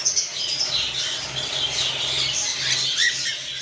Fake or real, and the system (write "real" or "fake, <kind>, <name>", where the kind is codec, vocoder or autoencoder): real